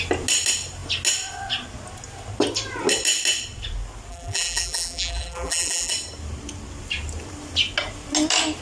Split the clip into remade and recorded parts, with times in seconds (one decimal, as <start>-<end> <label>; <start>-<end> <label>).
0.0-4.1 recorded; 4.1-5.9 remade; 5.9-8.6 recorded